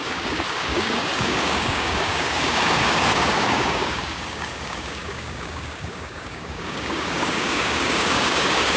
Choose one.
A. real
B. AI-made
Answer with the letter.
B